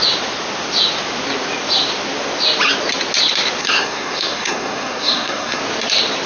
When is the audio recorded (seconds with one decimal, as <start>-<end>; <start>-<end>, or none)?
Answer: 0.0-3.6; 5.6-6.3